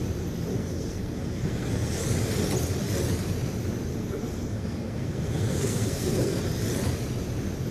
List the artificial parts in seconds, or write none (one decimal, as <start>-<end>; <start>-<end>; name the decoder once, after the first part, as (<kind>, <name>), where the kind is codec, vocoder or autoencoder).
0.5-2.0 (codec, SNAC); 3.9-6.4